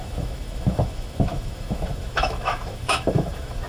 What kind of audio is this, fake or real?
fake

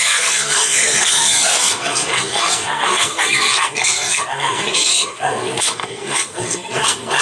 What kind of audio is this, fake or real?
fake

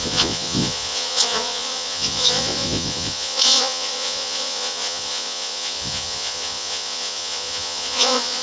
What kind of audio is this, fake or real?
fake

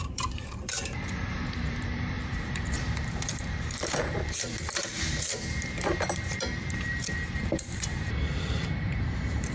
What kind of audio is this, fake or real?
fake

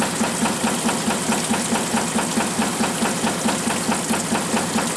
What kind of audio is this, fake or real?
real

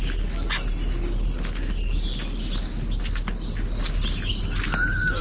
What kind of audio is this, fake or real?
real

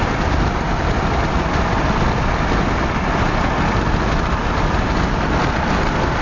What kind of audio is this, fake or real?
real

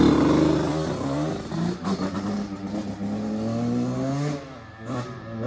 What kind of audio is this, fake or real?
real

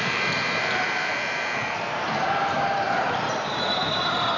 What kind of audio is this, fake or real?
fake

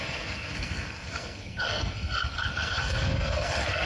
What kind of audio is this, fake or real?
fake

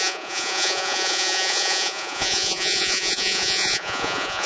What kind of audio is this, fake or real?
fake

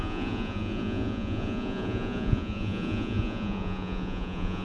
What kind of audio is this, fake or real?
fake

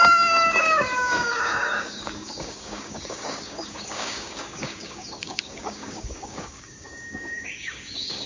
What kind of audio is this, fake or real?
fake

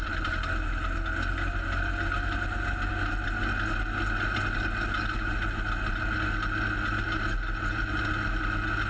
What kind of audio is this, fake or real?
real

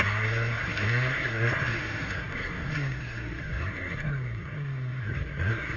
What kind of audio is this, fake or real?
fake